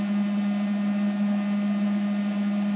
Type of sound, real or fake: real